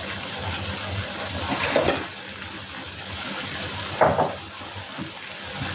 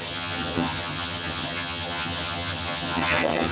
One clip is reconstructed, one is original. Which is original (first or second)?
first